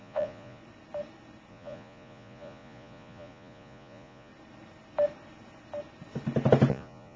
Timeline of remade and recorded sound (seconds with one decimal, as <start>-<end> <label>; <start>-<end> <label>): 0.0-0.6 remade; 0.6-1.5 recorded; 1.5-4.3 remade; 4.3-6.7 recorded; 6.7-7.2 remade